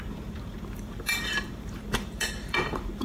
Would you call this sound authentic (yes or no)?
no